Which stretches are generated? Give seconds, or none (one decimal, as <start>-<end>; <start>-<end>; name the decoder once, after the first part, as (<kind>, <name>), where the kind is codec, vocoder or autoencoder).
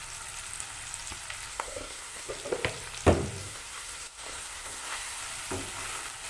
1.5-2.3 (codec, SNAC); 3.4-5.2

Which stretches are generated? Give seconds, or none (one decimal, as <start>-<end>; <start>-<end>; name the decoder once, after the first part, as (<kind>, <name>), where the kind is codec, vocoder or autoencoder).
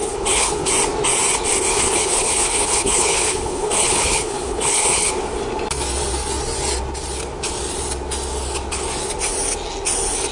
0.0-0.7 (codec, HILCodec); 1.7-5.1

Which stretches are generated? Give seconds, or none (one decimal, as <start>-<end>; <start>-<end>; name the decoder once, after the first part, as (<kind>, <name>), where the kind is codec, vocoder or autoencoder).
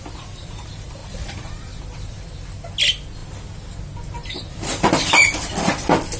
1.0-1.8 (vocoder, BigVGAN v2)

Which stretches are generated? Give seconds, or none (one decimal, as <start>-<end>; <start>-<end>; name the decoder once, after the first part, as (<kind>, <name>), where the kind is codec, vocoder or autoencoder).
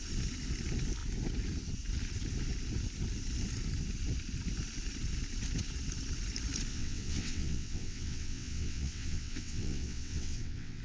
6.7-10.8 (vocoder, WaveNeXt)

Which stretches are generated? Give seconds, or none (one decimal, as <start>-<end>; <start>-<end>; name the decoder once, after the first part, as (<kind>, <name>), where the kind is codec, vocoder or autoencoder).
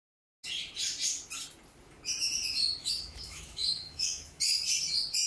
2.8-4.4 (autoencoder, DAC-VAE)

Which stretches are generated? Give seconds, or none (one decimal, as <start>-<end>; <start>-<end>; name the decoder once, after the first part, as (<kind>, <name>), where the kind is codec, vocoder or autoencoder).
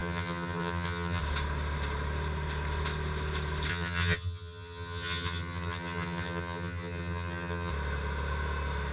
0.0-1.2 (vocoder, HiFi-GAN); 3.7-7.7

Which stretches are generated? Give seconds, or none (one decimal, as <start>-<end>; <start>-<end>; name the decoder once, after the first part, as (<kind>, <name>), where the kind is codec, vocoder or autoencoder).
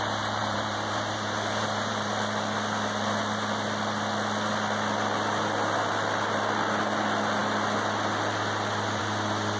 0.4-2.1 (vocoder, BigVGAN v2)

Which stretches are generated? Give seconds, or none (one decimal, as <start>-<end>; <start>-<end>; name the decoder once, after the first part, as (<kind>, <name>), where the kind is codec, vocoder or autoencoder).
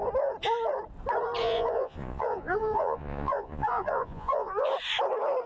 1.4-4.7 (vocoder, Vocos)